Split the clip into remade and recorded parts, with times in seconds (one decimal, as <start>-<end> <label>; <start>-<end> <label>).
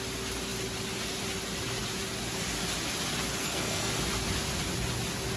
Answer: 0.0-3.4 recorded; 3.4-3.9 remade; 3.9-5.4 recorded